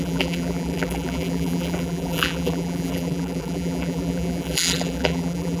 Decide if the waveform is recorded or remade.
remade